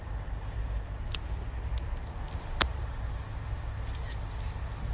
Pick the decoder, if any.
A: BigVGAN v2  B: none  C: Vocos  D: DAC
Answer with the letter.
B